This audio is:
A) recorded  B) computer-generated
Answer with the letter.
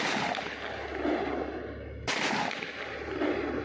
A